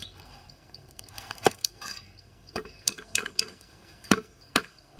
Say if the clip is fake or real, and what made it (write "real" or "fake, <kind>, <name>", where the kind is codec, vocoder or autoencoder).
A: fake, codec, SNAC